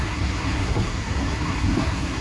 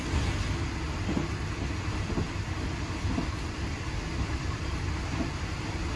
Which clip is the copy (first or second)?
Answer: first